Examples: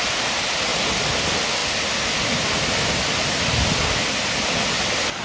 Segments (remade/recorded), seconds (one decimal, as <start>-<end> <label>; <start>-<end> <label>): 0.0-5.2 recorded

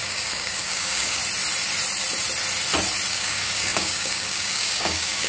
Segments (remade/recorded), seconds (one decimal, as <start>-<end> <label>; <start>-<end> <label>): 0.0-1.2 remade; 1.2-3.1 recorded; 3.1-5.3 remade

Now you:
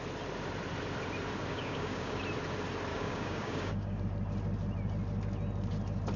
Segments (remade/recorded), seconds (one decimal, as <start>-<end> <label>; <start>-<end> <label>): 0.0-1.5 recorded; 1.5-2.2 remade; 2.2-2.9 recorded; 2.9-4.0 remade; 4.0-6.2 recorded

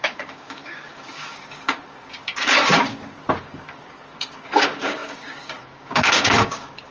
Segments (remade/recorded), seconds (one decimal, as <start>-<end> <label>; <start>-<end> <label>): 0.0-6.9 remade

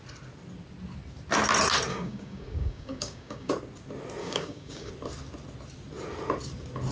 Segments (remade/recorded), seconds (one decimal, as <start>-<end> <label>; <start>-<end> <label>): 0.0-1.9 recorded; 1.9-3.5 remade; 3.5-4.2 recorded; 4.2-4.9 remade; 4.9-6.9 recorded